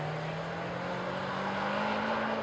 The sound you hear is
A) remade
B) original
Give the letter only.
B